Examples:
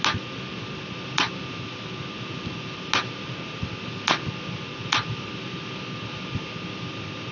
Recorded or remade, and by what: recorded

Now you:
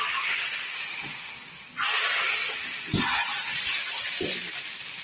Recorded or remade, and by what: recorded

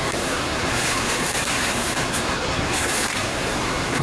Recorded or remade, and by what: remade, codec, SNAC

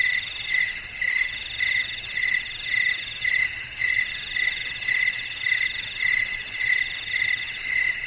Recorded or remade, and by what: recorded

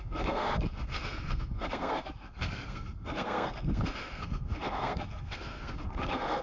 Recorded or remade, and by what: remade, codec, SNAC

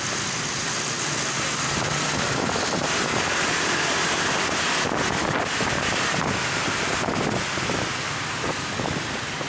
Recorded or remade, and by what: recorded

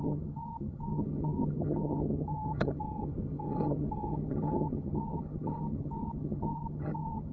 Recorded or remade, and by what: remade, vocoder, HiFi-GAN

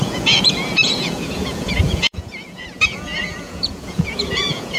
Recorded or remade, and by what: remade, vocoder, Vocos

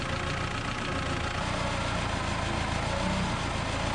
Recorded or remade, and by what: recorded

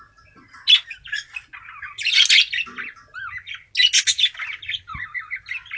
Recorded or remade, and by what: recorded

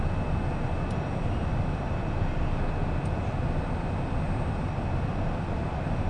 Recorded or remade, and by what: recorded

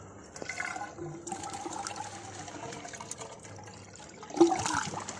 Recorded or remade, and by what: recorded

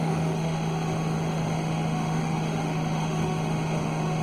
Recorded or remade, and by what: remade, autoencoder, DAC-VAE